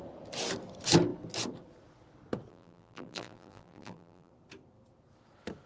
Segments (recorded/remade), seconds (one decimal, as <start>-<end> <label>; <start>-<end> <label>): 0.0-2.5 recorded; 2.5-4.3 remade; 4.3-5.7 recorded